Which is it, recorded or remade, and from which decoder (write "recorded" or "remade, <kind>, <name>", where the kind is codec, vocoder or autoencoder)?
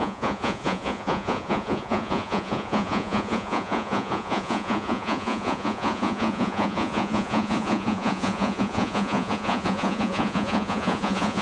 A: remade, vocoder, Vocos